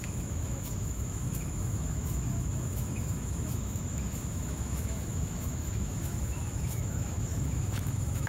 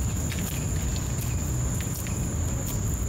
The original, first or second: second